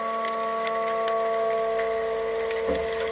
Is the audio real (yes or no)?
yes